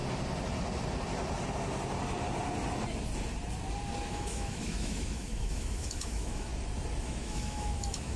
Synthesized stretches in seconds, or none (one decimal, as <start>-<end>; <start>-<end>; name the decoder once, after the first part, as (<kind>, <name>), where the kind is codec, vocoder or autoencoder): 4.1-6.5 (autoencoder, DAC-VAE); 7.0-8.2